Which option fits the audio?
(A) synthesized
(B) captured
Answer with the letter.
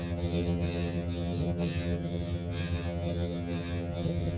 A